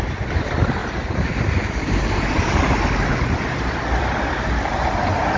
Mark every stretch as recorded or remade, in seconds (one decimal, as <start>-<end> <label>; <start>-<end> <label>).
0.0-5.4 recorded